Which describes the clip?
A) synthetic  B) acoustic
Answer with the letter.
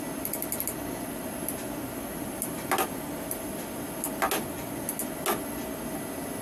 B